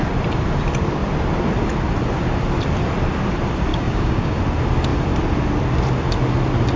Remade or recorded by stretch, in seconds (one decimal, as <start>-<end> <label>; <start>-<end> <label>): 0.0-3.7 recorded; 3.7-4.4 remade; 4.4-6.8 recorded